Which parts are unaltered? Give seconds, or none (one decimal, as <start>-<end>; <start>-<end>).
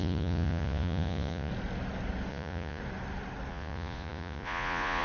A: 1.5-2.3; 2.8-3.5